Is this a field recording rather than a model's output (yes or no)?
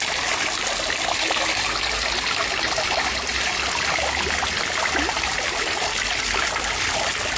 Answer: yes